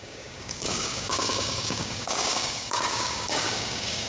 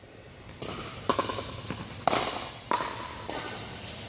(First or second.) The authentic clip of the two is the second